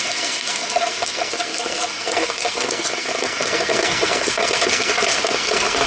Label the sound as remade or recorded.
remade